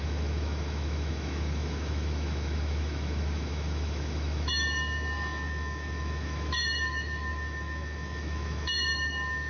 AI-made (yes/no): yes